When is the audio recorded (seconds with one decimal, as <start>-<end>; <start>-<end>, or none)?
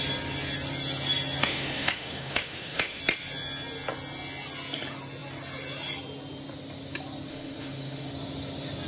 0.0-1.4; 3.0-7.3; 8.1-8.9